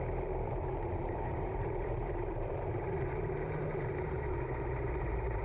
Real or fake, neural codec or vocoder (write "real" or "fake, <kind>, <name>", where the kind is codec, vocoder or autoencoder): fake, vocoder, BigVGAN v2